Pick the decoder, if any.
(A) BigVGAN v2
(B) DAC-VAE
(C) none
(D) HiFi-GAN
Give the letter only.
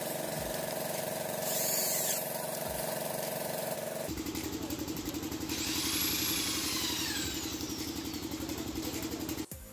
A